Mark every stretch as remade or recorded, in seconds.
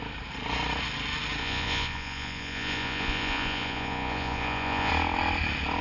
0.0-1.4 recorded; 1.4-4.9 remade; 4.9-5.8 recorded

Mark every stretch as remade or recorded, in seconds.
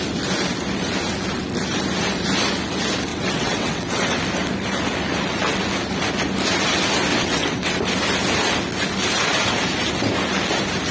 0.0-3.1 recorded; 3.1-4.2 remade; 4.2-7.1 recorded; 7.1-7.8 remade; 7.8-10.9 recorded